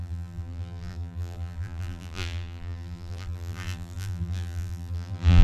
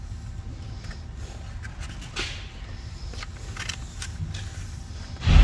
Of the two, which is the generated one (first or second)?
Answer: first